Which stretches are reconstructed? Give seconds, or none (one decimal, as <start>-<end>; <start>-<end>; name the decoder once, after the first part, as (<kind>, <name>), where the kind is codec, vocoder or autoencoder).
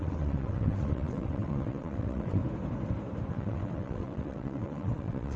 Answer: 0.0-2.4 (vocoder, WaveNeXt); 3.3-5.4